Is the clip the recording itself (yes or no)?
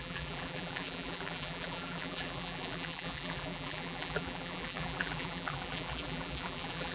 no